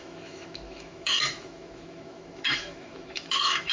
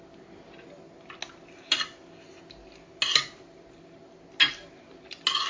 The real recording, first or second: second